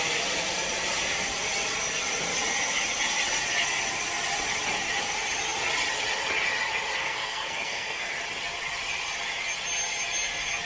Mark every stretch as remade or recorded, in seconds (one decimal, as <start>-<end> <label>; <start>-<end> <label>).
0.0-7.0 recorded; 7.0-8.1 remade; 8.1-10.7 recorded